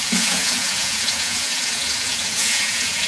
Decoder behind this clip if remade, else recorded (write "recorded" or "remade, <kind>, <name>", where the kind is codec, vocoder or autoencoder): remade, vocoder, Vocos